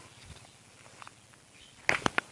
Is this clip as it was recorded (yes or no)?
yes